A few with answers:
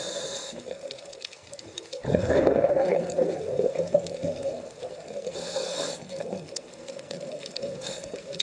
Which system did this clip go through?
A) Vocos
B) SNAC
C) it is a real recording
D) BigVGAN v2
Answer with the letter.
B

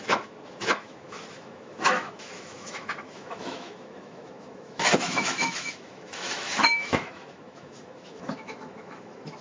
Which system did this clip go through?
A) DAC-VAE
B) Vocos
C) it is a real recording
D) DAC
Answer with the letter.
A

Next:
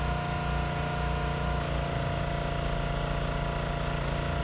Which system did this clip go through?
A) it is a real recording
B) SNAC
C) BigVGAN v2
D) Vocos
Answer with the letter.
A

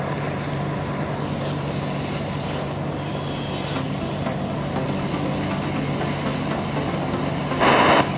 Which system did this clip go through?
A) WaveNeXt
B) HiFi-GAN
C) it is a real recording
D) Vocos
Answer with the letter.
C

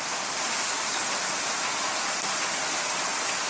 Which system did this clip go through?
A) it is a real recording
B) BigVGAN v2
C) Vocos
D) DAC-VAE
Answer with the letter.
A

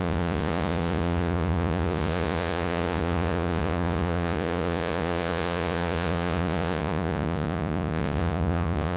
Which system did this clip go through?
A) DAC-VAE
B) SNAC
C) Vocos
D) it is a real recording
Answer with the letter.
C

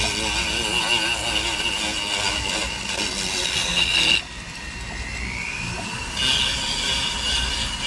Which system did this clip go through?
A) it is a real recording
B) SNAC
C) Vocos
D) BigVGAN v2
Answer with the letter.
A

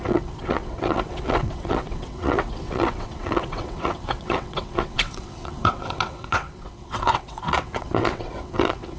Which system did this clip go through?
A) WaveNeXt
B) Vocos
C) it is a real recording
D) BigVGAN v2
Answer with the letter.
A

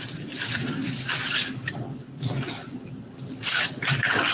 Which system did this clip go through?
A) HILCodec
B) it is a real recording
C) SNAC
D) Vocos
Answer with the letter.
B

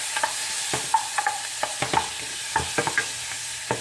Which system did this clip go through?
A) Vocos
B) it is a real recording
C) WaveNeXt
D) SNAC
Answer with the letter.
B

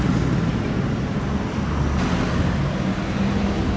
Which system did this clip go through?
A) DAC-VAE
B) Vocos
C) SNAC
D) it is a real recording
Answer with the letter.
D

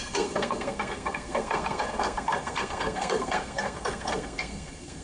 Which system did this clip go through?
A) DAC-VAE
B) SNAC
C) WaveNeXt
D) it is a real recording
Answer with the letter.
B